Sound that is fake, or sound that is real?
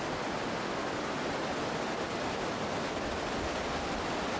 real